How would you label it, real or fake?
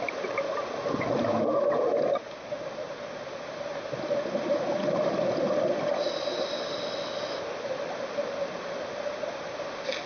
real